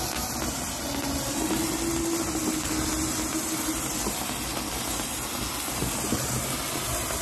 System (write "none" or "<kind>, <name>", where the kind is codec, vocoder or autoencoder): none